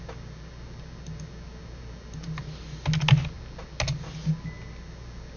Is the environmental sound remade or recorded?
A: recorded